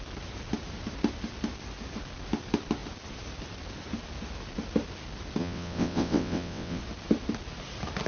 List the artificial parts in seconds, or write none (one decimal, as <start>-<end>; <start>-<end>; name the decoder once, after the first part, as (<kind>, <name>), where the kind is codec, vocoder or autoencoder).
5.4-6.8 (vocoder, WaveNeXt)

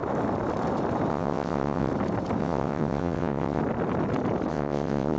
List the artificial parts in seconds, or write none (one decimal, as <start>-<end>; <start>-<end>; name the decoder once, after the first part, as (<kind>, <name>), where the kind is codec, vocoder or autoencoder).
1.1-1.9 (vocoder, WaveNeXt); 2.4-3.6; 4.5-5.2

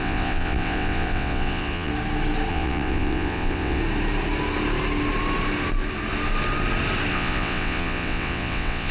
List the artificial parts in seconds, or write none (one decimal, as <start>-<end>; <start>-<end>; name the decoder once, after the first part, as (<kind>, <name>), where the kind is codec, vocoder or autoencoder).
0.0-1.9 (vocoder, WaveNeXt); 2.5-3.8; 7.1-8.9

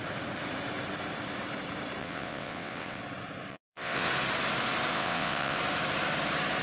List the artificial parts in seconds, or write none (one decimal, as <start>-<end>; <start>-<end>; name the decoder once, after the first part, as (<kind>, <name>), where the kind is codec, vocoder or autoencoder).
2.0-3.0 (vocoder, WaveNeXt); 3.5-4.1; 4.9-5.6

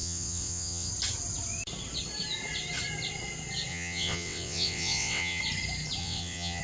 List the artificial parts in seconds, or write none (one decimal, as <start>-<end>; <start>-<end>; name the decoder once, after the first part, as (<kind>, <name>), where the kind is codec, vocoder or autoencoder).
0.0-0.9 (vocoder, WaveNeXt); 3.7-5.4; 6.0-6.6